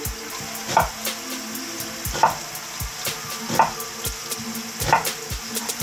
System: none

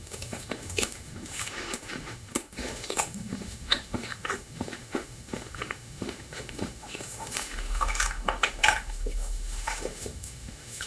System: autoencoder, DAC-VAE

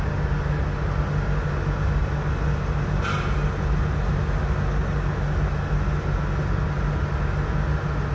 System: none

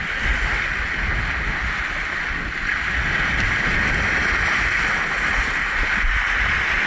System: none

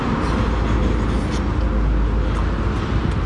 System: none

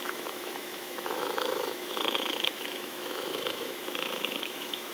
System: autoencoder, DAC-VAE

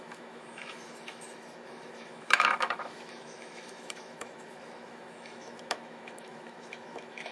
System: autoencoder, DAC-VAE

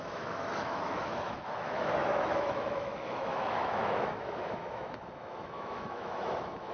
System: autoencoder, DAC-VAE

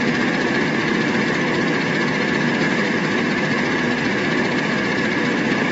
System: none